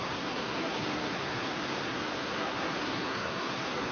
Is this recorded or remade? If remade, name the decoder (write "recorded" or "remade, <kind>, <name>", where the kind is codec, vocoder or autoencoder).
remade, codec, SNAC